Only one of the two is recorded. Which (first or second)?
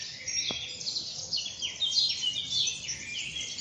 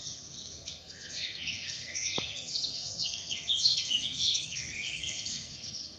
first